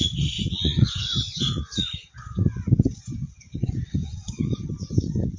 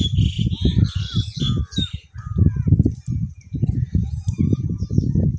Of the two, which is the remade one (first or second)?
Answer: first